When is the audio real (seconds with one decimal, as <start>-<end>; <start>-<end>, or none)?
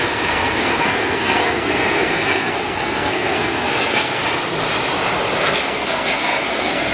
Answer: 4.2-5.4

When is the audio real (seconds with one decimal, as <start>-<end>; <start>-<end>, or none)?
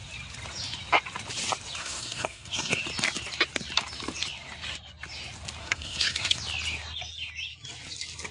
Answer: 0.0-1.8; 2.8-5.6; 6.4-8.3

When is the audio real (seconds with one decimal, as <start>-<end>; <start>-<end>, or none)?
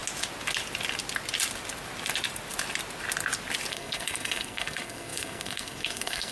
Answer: 0.0-3.7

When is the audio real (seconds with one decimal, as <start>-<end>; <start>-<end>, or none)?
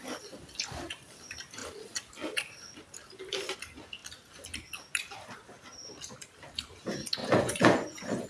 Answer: 0.0-7.2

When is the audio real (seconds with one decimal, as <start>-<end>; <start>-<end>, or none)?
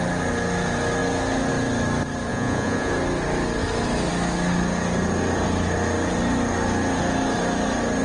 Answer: 0.0-2.3; 2.9-8.0